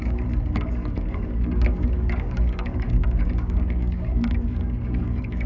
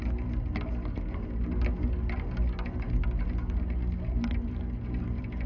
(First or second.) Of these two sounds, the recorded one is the second